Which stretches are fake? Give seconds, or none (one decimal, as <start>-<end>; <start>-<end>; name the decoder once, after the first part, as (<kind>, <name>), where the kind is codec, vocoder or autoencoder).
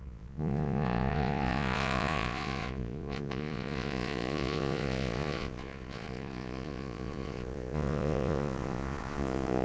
0.0-9.6 (vocoder, Vocos)